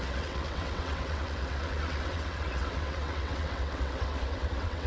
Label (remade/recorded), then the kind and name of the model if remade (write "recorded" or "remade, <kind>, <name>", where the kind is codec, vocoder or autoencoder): remade, vocoder, WaveNeXt